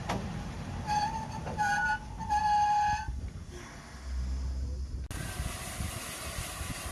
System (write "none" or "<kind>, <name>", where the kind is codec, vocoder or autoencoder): none